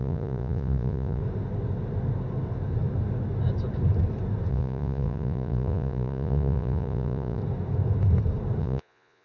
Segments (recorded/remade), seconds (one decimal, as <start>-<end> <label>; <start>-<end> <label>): 0.0-1.2 remade; 1.2-4.5 recorded; 4.5-7.4 remade; 7.4-8.6 recorded; 8.6-9.2 remade